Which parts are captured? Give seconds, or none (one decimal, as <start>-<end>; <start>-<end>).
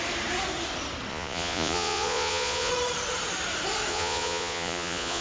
0.0-1.1; 2.7-3.9